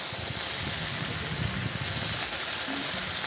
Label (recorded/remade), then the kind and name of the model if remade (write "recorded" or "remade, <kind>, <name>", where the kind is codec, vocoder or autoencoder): recorded